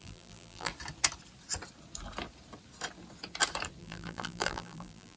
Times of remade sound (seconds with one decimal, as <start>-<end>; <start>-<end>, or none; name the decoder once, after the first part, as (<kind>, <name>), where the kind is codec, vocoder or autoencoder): 0.0-0.7 (vocoder, BigVGAN v2); 3.8-5.2